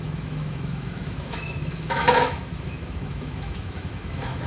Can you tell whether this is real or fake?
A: fake